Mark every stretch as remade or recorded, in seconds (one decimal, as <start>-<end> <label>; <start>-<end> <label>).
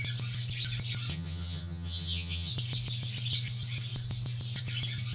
0.0-1.1 recorded; 1.1-2.5 remade; 2.5-5.1 recorded